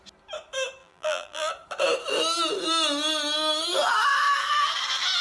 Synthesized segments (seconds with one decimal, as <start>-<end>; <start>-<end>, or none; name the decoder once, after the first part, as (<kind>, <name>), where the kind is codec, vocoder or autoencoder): 0.8-1.5 (vocoder, BigVGAN v2)